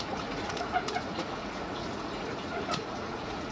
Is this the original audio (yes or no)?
no